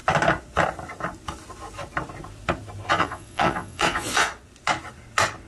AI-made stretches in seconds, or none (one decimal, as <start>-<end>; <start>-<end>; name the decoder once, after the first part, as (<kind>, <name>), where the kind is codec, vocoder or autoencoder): 2.9-4.3 (vocoder, Vocos)